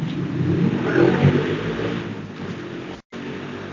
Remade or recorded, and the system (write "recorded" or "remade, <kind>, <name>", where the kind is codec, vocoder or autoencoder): recorded